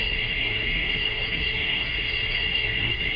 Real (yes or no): no